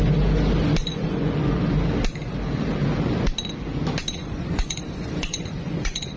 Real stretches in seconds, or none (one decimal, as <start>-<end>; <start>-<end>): 0.0-0.8; 1.6-4.2